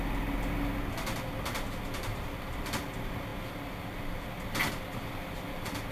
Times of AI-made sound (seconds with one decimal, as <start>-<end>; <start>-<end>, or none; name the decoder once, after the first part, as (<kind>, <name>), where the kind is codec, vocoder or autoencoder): 2.1-2.7 (vocoder, BigVGAN v2)